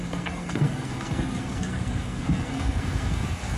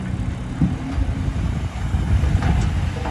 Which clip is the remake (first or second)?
first